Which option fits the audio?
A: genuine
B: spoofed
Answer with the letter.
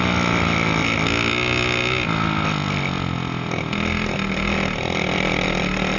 A